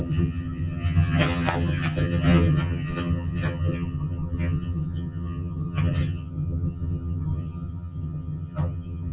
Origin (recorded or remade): remade